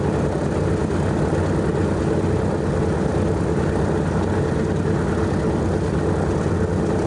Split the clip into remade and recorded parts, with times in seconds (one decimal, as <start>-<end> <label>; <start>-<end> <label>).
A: 0.0-7.1 recorded